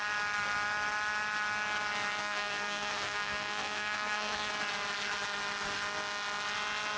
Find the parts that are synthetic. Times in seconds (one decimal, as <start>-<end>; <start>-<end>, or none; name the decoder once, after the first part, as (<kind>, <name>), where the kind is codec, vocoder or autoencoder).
2.2-4.5 (codec, SNAC)